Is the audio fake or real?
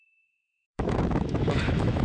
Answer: fake